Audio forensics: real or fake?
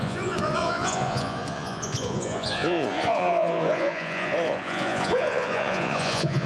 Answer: fake